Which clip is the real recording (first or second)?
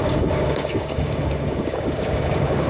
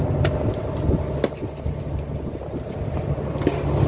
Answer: second